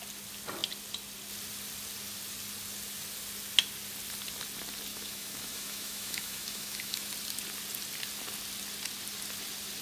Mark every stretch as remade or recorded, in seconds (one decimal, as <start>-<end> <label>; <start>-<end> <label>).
0.0-4.9 recorded; 4.9-7.1 remade; 7.1-9.8 recorded